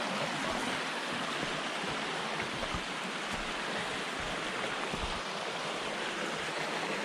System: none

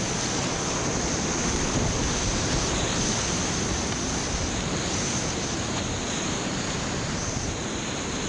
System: none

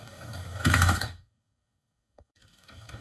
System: codec, DAC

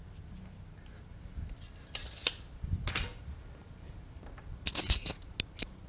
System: none